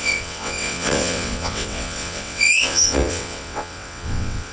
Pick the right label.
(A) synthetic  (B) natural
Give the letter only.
A